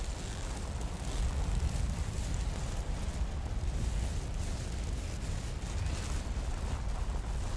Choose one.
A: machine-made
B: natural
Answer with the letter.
B